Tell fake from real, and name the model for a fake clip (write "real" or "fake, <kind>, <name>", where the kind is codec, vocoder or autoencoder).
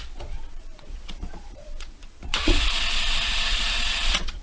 fake, vocoder, Vocos